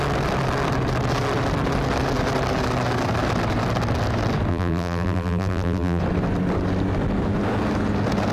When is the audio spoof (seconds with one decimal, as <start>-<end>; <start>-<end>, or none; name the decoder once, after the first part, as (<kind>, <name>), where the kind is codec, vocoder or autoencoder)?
4.5-6.0 (vocoder, BigVGAN v2)